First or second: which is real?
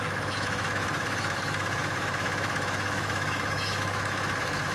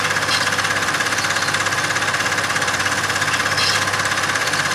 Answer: second